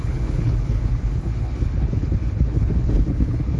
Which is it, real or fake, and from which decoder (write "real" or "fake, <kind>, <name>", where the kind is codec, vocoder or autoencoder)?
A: fake, codec, HILCodec